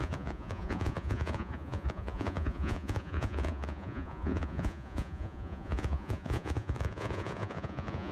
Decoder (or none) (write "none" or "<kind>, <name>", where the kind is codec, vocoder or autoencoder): vocoder, Vocos